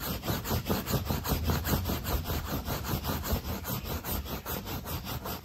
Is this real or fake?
fake